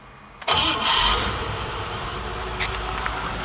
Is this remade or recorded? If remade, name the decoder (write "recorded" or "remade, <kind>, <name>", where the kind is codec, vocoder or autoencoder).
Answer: recorded